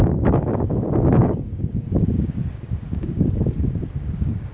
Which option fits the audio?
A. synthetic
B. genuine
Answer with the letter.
A